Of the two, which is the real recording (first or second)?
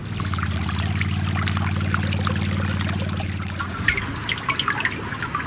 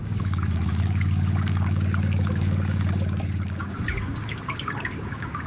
first